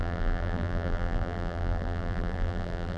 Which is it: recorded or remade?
remade